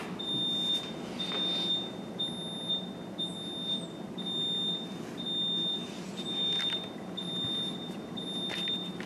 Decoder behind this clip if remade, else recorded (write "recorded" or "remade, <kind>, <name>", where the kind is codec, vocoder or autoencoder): recorded